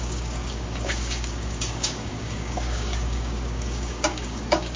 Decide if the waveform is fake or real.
fake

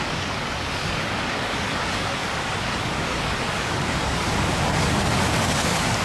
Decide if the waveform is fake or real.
fake